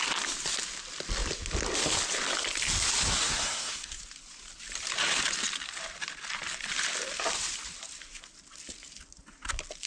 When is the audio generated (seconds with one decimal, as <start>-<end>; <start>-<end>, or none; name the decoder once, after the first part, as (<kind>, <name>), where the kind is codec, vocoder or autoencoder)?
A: 3.2-4.0 (codec, SNAC)

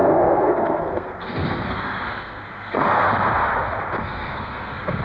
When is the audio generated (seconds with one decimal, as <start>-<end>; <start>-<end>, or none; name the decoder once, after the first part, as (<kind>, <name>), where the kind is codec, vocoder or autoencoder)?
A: 0.0-3.0 (codec, SNAC); 4.0-5.0

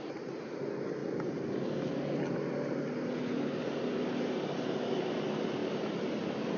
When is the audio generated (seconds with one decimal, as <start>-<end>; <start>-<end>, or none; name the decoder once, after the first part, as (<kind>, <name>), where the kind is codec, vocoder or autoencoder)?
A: none

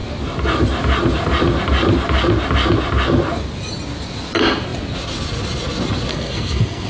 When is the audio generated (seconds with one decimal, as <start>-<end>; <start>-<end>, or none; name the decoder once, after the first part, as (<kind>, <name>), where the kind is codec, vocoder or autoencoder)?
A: 6.1-6.9 (codec, SNAC)

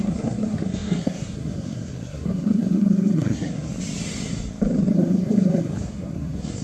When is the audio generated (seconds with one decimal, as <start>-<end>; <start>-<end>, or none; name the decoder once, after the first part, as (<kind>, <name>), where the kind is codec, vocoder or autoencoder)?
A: 0.0-3.7 (codec, SNAC); 4.9-6.6

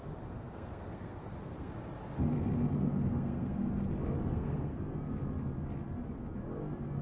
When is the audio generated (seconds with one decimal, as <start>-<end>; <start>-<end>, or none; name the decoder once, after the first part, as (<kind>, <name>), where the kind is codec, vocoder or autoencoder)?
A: 0.0-1.7 (codec, SNAC); 3.1-3.7; 4.3-4.8

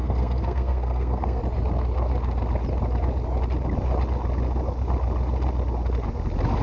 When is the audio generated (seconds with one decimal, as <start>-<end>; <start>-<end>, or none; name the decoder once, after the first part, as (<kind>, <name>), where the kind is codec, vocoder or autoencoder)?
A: 0.0-1.4 (codec, SNAC)

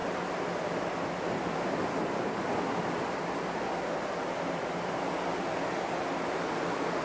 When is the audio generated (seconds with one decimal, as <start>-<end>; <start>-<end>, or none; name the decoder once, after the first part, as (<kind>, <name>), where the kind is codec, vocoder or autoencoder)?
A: none